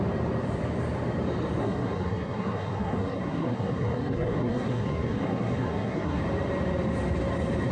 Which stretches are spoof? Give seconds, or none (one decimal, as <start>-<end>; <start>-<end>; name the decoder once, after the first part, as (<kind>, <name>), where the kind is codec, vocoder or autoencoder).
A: 1.6-6.2 (codec, SNAC)